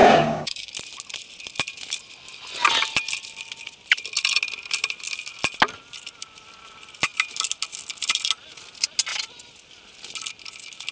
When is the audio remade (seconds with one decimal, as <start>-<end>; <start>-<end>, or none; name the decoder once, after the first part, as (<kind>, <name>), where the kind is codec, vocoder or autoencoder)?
0.0-0.7 (codec, DAC)